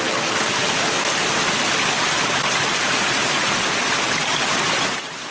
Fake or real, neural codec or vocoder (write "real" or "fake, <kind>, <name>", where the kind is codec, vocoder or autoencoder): real